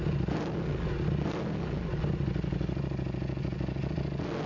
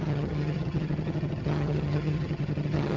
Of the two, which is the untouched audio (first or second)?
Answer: first